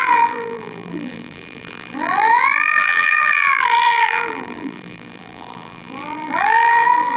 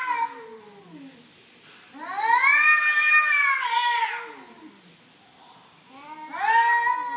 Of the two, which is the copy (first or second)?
first